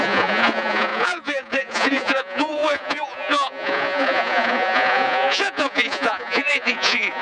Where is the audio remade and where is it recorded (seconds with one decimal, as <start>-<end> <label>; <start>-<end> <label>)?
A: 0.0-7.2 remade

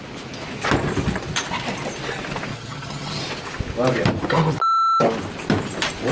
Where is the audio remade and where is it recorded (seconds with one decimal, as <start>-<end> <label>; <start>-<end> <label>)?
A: 0.0-2.5 recorded; 2.5-3.2 remade; 3.2-6.1 recorded

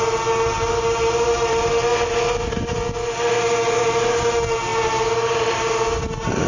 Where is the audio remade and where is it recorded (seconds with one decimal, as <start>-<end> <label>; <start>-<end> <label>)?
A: 0.0-1.9 remade; 1.9-3.4 recorded; 3.4-6.5 remade

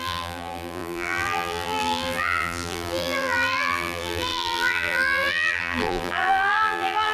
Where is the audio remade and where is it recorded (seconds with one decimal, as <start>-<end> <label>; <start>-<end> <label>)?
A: 0.0-7.1 remade

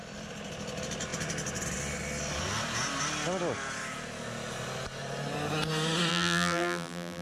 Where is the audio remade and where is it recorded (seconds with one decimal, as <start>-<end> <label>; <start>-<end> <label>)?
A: 0.0-6.1 recorded; 6.1-7.2 remade

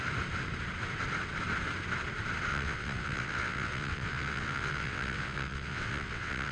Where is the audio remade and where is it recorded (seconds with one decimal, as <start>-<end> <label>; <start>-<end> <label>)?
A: 0.0-2.5 recorded; 2.5-6.5 remade

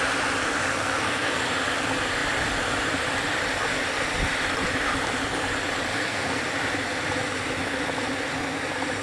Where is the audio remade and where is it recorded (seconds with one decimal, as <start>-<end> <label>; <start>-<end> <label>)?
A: 0.0-0.7 recorded; 0.7-1.4 remade; 1.4-5.9 recorded; 5.9-6.4 remade; 6.4-9.0 recorded

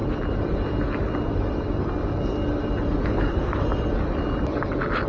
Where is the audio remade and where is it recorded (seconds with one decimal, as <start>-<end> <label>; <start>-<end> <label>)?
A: 0.0-3.1 recorded; 3.1-3.5 remade; 3.5-5.1 recorded